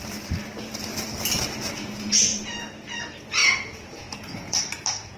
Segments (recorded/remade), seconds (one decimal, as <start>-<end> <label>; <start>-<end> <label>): 0.0-2.3 recorded; 2.3-3.0 remade; 3.0-3.4 recorded; 3.4-4.6 remade; 4.6-5.2 recorded